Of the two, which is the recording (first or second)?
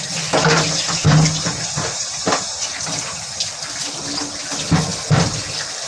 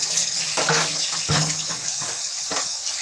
first